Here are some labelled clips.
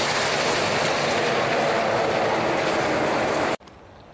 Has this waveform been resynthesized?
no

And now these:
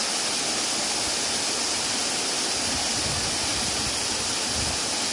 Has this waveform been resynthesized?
no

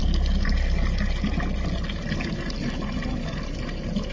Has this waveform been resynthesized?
no